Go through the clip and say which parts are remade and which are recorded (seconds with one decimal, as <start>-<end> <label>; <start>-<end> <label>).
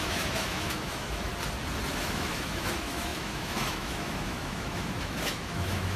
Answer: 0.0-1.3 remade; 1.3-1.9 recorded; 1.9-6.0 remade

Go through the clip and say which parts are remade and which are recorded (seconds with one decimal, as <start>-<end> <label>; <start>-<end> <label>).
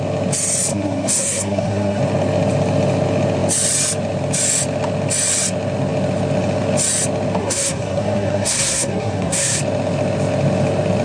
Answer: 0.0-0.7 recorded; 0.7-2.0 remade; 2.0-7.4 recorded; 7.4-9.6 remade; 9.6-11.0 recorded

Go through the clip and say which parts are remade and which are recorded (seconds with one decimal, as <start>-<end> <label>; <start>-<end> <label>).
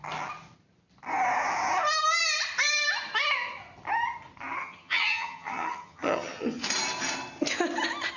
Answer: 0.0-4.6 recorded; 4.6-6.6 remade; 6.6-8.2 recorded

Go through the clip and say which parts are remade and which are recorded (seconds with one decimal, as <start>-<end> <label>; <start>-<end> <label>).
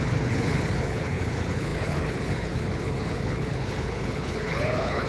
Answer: 0.0-5.1 remade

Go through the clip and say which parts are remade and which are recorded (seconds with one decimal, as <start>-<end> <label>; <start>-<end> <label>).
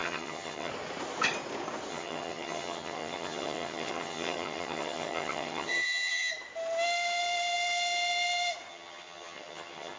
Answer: 0.0-0.7 remade; 0.7-1.9 recorded; 1.9-6.3 remade; 6.3-8.7 recorded; 8.7-10.0 remade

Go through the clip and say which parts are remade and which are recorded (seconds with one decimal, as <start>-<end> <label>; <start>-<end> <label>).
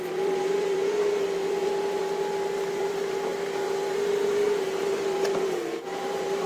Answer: 0.0-6.5 remade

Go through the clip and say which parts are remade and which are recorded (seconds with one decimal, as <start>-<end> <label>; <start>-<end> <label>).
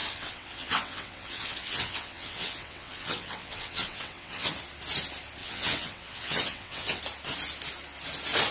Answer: 0.0-4.5 remade; 4.5-5.4 recorded; 5.4-7.0 remade; 7.0-8.5 recorded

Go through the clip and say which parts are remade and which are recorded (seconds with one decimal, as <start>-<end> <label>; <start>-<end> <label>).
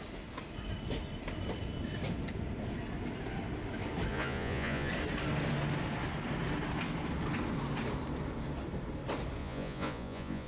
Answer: 0.0-4.1 recorded; 4.1-4.9 remade; 4.9-9.4 recorded; 9.4-10.5 remade